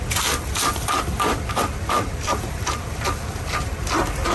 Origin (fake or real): fake